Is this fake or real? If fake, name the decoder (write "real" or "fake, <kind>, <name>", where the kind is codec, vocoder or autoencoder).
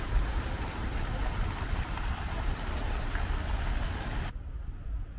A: fake, vocoder, BigVGAN v2